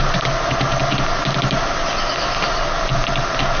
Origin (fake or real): real